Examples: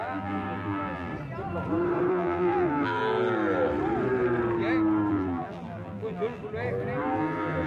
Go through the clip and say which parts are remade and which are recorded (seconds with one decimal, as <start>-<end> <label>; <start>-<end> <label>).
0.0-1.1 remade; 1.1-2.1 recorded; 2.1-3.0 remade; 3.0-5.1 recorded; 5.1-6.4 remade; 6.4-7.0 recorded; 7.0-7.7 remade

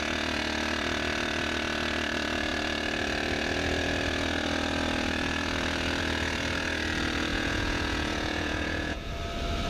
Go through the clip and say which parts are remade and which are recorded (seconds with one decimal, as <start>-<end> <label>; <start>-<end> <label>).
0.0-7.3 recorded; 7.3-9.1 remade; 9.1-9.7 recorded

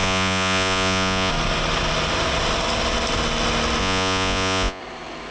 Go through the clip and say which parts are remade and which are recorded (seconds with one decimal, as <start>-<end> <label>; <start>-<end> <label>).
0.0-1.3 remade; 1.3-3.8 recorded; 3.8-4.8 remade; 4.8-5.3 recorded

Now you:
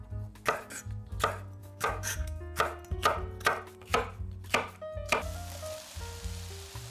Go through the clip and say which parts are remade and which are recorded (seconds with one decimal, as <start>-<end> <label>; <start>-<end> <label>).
0.0-1.6 recorded; 1.6-2.4 remade; 2.4-6.9 recorded